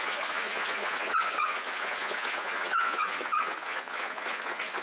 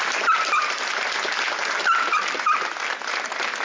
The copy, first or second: first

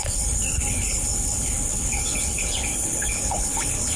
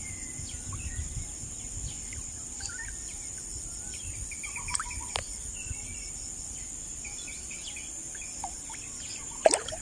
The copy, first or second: first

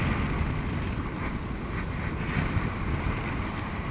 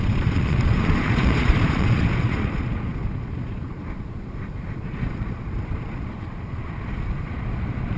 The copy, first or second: second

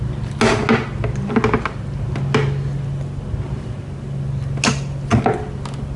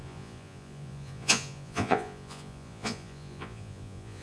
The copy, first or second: second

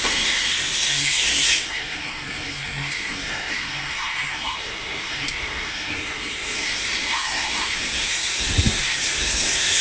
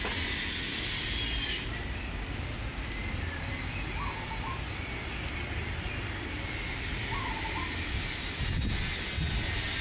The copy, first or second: first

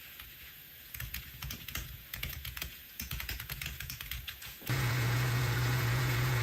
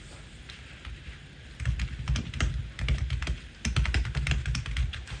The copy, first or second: first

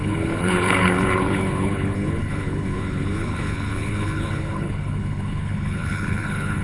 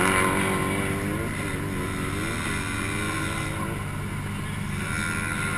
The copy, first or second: first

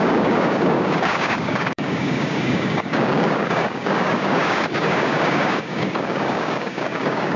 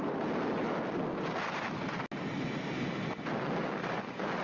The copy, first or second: first